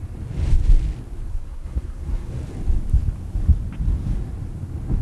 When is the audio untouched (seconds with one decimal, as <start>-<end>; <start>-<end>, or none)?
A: 0.0-1.3; 2.3-5.0